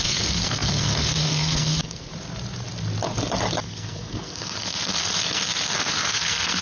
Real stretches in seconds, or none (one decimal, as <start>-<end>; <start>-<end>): 2.1-3.6